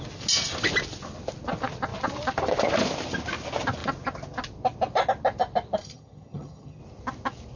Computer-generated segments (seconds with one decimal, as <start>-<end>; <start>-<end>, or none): 5.8-6.8